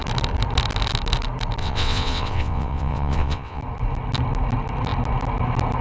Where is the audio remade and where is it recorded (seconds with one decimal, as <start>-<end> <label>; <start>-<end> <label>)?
0.0-1.6 recorded; 1.6-3.6 remade; 3.6-5.8 recorded

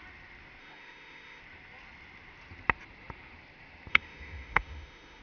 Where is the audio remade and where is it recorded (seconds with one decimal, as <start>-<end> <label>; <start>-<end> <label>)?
0.0-0.6 recorded; 0.6-1.4 remade; 1.4-3.9 recorded; 3.9-5.2 remade

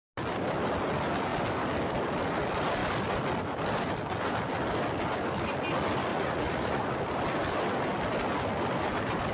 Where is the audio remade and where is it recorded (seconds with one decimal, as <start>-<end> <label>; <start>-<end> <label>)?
0.0-6.1 recorded; 6.1-7.0 remade; 7.0-9.3 recorded

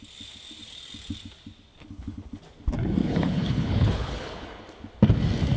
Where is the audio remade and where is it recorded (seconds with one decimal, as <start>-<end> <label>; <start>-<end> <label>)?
0.0-1.7 recorded; 1.7-2.4 remade; 2.4-3.0 recorded; 3.0-4.6 remade; 4.6-5.6 recorded

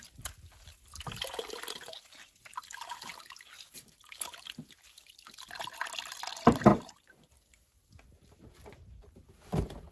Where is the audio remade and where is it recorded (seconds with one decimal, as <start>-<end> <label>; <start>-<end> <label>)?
0.0-9.9 recorded

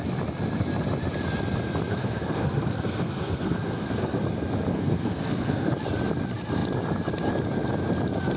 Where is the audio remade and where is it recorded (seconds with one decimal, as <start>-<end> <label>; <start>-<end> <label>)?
0.0-1.9 recorded; 1.9-4.2 remade; 4.2-4.7 recorded; 4.7-5.7 remade; 5.7-8.4 recorded

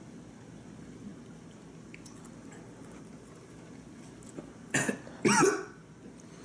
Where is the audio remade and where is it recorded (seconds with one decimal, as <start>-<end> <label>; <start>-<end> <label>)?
0.0-6.4 recorded

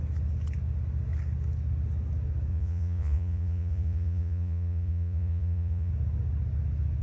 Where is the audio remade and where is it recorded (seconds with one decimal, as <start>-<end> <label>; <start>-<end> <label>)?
0.0-2.5 recorded; 2.5-5.9 remade; 5.9-7.0 recorded